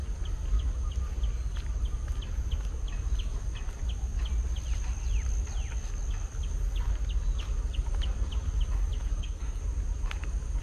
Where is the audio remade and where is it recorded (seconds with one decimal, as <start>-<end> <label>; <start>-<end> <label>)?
0.0-9.0 recorded; 9.0-9.6 remade; 9.6-10.6 recorded